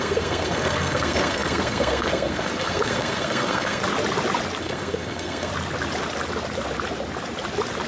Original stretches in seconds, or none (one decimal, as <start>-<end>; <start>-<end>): 3.8-4.6; 5.5-7.9